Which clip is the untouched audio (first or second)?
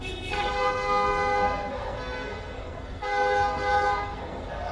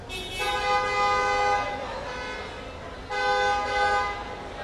second